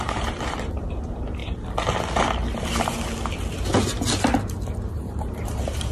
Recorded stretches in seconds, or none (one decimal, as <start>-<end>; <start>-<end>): 1.4-4.9